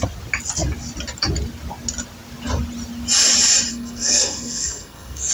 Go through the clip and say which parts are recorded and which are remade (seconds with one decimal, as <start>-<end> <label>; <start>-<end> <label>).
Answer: 0.0-3.7 recorded; 3.7-5.3 remade